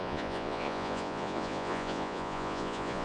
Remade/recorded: remade